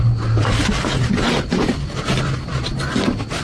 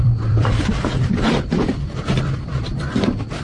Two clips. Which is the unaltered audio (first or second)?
first